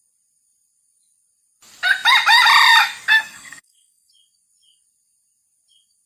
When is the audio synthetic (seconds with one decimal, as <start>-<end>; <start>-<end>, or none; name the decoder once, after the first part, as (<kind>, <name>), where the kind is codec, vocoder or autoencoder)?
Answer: 3.1-4.1 (codec, SNAC)

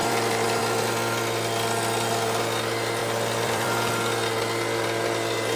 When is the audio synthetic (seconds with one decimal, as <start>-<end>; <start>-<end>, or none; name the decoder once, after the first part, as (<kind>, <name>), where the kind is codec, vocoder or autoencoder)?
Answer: 0.0-0.6 (vocoder, BigVGAN v2); 3.0-3.9